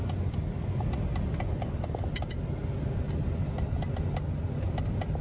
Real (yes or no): yes